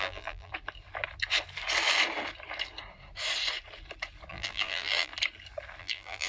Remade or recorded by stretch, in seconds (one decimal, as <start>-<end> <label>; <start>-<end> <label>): 0.0-0.5 remade; 0.5-4.3 recorded; 4.3-5.1 remade; 5.1-5.8 recorded; 5.8-6.3 remade